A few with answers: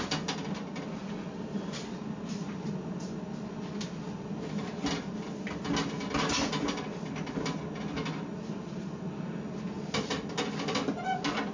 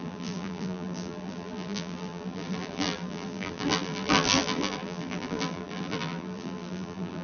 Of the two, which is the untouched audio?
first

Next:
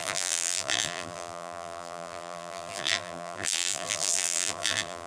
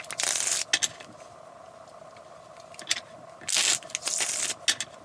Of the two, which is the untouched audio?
second